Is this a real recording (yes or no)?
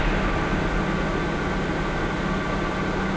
yes